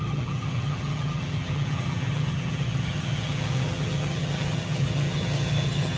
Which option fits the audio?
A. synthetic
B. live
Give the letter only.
A